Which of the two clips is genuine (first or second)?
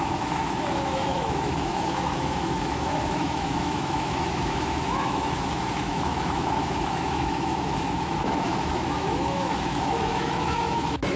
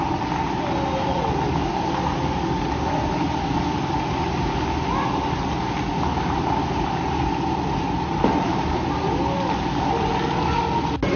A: second